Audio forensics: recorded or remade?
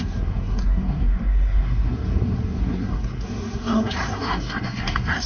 remade